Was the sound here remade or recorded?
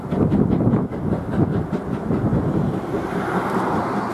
recorded